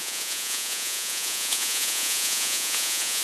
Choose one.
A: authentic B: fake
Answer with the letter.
B